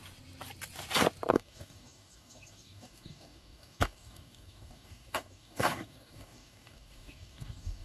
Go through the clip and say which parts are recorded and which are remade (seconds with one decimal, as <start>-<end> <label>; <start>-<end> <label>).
0.0-1.3 recorded; 1.3-7.8 remade